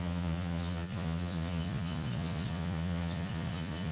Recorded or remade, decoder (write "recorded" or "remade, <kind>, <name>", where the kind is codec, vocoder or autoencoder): remade, vocoder, Vocos